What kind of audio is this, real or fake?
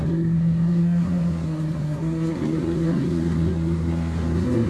fake